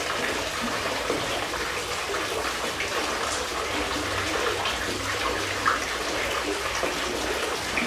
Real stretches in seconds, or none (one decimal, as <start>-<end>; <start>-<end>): 0.0-7.9